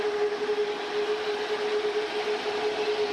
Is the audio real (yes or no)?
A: yes